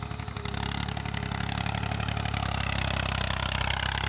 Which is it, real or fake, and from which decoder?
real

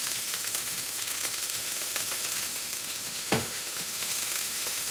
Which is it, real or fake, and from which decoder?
fake, autoencoder, DAC-VAE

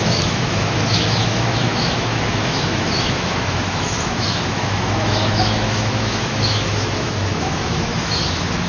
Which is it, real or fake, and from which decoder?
fake, autoencoder, DAC-VAE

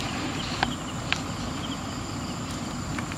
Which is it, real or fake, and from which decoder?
real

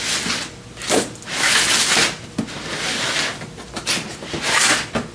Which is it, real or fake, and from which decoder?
real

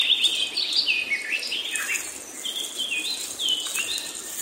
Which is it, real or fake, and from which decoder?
real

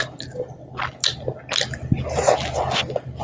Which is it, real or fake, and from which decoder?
real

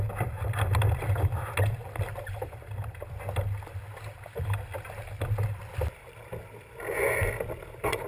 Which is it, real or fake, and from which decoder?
real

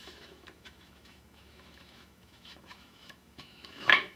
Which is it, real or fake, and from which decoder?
fake, autoencoder, DAC-VAE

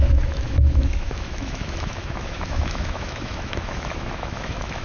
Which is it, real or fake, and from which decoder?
fake, autoencoder, DAC-VAE